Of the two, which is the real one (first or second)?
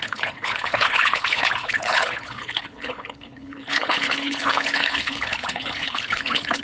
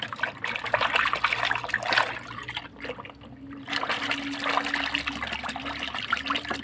second